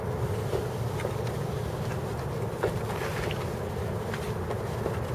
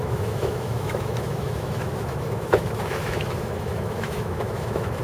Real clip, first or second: first